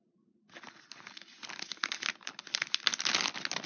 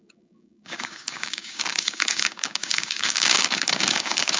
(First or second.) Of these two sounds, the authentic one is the first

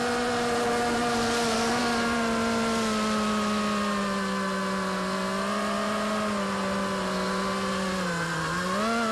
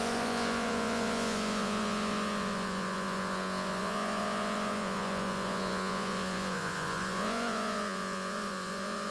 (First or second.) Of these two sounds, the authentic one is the first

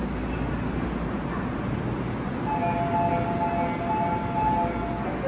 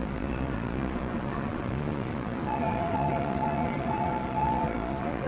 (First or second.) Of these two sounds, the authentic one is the first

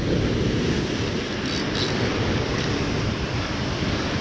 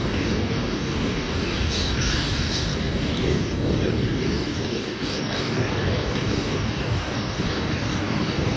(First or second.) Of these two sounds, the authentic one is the first